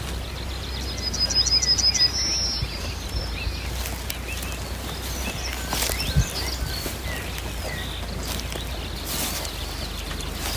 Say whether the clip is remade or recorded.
recorded